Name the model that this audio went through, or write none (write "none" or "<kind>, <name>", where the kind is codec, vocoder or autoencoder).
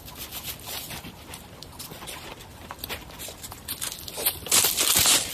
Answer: none